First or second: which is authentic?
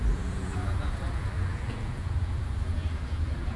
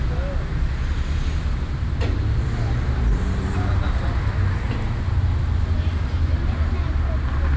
second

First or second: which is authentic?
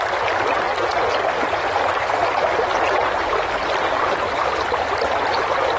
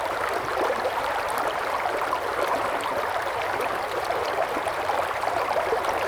first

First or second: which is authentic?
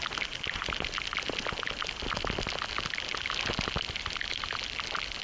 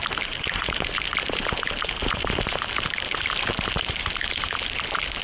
first